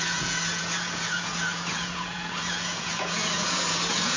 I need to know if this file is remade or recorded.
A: remade